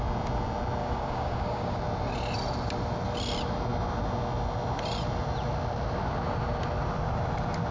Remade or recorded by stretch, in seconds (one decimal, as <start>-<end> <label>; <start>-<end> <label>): 0.0-0.8 recorded; 0.8-1.8 remade; 1.8-7.7 recorded